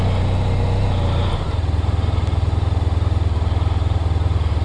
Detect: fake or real real